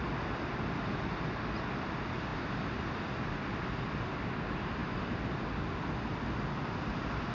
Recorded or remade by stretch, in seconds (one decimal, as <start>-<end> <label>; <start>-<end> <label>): 0.0-7.3 recorded